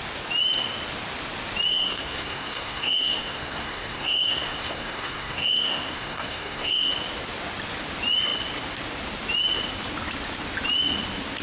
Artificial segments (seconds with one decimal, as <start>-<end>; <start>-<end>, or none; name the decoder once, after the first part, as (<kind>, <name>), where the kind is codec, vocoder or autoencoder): 1.7-6.9 (codec, SNAC)